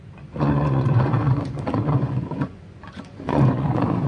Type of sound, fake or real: fake